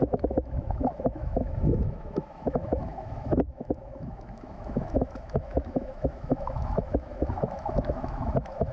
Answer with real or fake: fake